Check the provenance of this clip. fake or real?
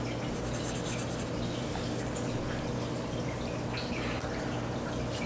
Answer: real